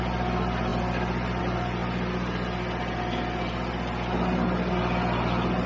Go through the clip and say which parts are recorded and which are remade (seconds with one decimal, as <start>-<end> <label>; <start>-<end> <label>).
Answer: 0.0-5.7 recorded